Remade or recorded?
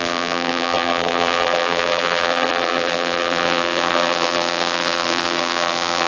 remade